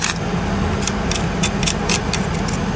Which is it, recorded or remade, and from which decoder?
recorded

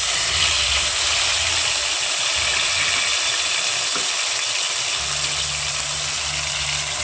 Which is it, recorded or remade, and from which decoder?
recorded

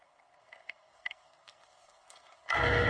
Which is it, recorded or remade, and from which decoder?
remade, codec, SNAC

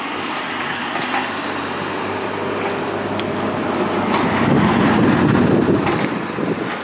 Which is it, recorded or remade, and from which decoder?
recorded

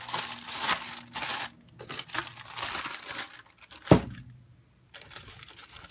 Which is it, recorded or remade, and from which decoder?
recorded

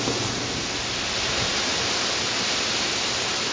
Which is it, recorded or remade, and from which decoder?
recorded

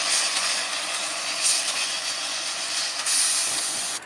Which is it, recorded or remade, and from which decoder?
remade, vocoder, Vocos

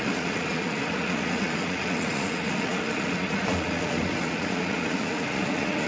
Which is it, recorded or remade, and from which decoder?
remade, vocoder, Vocos